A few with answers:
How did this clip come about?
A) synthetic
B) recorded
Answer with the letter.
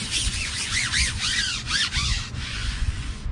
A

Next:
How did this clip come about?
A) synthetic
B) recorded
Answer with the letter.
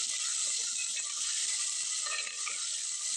A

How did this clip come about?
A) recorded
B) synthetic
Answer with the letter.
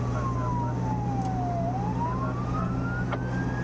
A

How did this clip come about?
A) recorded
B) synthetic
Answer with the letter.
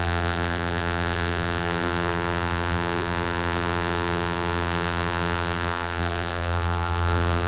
B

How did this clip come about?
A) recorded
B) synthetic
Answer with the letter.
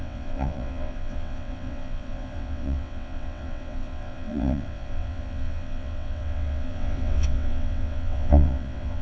B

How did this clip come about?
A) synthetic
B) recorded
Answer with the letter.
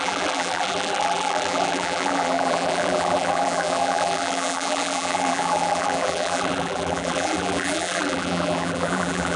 A